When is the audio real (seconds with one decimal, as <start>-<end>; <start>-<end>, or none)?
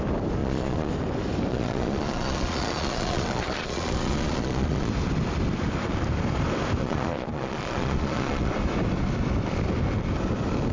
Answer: 0.0-0.4; 0.9-1.5; 4.9-6.8; 8.5-10.7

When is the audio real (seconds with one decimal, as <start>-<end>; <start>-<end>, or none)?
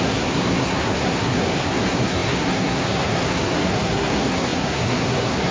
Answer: none